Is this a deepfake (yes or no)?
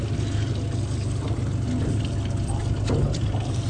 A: no